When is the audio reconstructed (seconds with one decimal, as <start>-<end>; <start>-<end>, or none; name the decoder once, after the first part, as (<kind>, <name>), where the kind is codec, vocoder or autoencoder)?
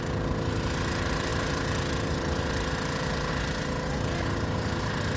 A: none